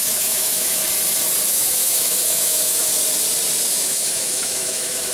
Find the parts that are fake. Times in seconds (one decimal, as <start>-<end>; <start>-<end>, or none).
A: 0.0-0.8; 1.5-2.9; 3.7-5.1